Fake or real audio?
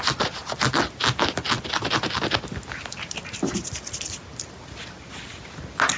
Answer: real